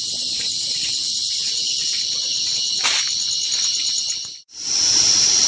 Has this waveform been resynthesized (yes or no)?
yes